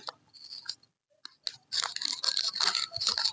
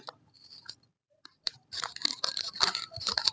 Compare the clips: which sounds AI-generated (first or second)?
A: second